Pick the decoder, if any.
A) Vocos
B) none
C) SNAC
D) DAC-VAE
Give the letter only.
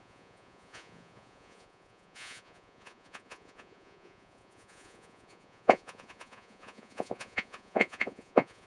A